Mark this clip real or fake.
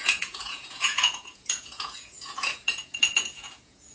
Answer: fake